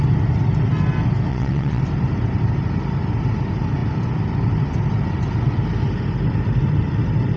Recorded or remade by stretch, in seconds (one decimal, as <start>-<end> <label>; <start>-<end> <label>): 0.0-1.3 recorded; 1.3-1.8 remade; 1.8-7.4 recorded